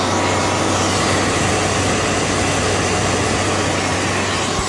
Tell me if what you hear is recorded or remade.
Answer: recorded